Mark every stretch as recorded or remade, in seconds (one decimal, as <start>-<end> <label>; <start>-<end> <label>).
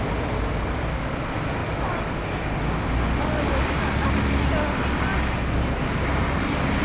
0.0-6.8 recorded